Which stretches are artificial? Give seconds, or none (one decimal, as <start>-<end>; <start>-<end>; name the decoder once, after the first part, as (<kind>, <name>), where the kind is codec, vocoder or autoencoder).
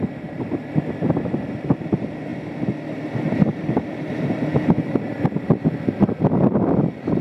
0.0-2.3 (vocoder, BigVGAN v2); 3.3-4.5; 6.0-7.2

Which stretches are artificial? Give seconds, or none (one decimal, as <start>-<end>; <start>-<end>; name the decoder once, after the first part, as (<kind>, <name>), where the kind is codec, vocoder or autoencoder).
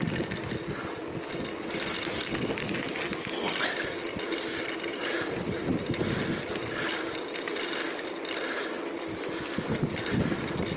4.9-6.0 (vocoder, BigVGAN v2)